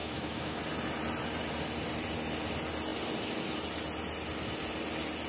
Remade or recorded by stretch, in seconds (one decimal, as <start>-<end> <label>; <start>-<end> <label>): 0.0-0.6 remade; 0.6-5.3 recorded